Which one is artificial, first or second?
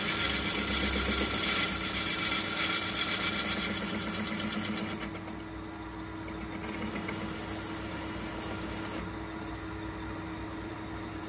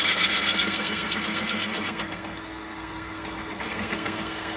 second